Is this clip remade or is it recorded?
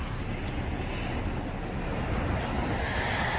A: recorded